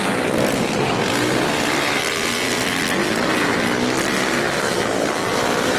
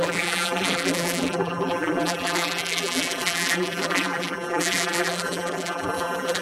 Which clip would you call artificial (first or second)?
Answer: second